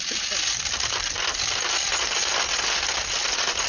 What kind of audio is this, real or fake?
real